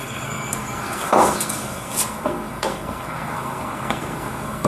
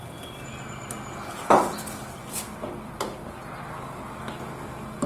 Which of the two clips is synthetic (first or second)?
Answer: first